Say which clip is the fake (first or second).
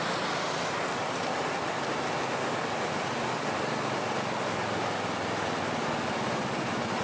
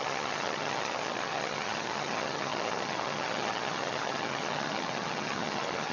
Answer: second